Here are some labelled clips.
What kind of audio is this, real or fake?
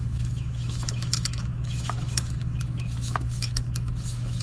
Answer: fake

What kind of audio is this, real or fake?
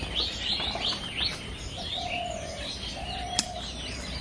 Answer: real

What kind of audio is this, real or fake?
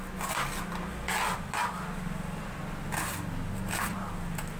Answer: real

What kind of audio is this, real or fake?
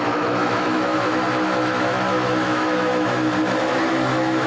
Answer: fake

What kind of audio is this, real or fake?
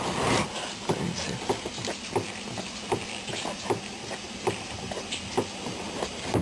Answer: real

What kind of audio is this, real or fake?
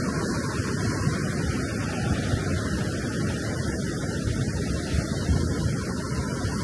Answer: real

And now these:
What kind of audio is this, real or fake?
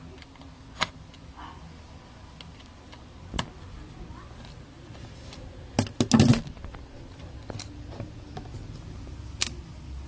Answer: real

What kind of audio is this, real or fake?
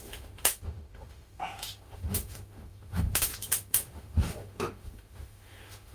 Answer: fake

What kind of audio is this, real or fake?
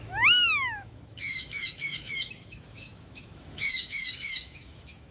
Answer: fake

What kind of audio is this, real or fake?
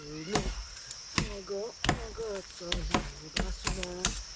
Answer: real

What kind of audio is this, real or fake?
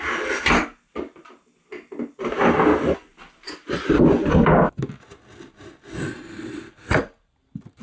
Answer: real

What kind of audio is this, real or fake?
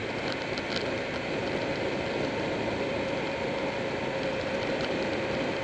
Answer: real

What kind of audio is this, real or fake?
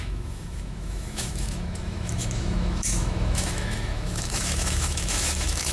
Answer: fake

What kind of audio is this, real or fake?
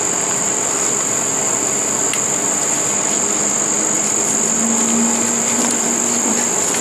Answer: real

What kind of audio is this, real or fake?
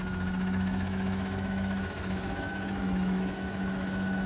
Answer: fake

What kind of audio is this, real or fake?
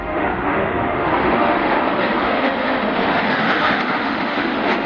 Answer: fake